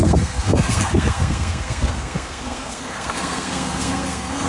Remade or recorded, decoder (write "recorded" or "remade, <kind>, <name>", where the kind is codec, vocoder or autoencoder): remade, codec, SNAC